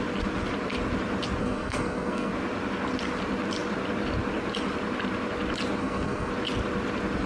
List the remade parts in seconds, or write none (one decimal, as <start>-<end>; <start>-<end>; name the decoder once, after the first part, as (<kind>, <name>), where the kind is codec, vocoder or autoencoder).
1.4-2.3 (codec, SNAC); 5.8-6.3